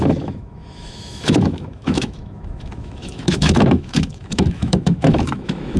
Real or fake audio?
fake